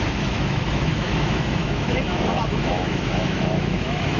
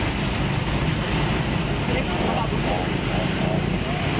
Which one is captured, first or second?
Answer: second